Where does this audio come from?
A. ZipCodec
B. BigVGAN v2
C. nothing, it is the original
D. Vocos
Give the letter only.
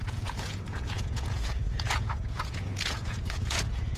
D